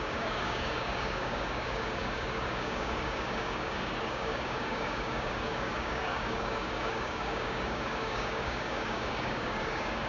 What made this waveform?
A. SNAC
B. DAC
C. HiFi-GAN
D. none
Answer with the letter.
B